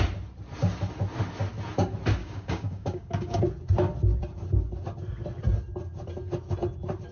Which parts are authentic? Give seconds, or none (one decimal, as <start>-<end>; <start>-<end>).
0.0-2.2; 3.4-7.1